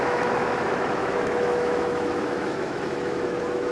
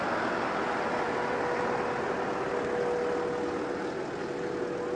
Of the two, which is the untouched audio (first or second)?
second